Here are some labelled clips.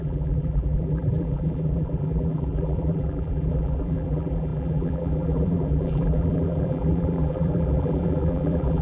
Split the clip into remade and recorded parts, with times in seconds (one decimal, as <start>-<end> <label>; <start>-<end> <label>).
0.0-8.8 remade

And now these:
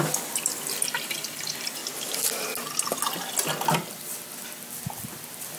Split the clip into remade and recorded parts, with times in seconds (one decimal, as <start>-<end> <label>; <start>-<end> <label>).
0.0-1.8 remade; 1.8-3.9 recorded; 3.9-5.6 remade

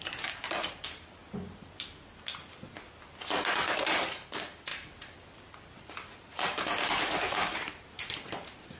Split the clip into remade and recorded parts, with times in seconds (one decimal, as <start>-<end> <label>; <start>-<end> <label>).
0.0-1.2 remade; 1.2-3.8 recorded; 3.8-8.8 remade